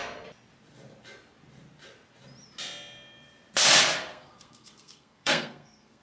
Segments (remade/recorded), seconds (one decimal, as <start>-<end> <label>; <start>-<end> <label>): 0.0-4.1 recorded; 4.1-6.0 remade